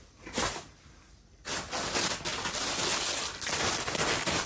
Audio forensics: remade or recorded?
recorded